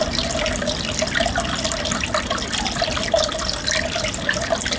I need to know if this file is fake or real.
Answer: real